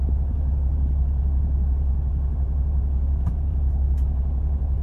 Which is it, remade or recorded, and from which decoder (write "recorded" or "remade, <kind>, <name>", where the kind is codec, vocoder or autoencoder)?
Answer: remade, vocoder, BigVGAN v2